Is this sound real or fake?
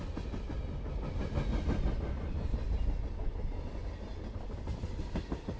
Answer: real